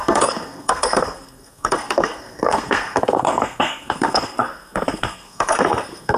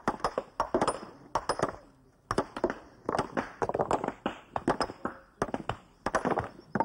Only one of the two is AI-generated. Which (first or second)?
first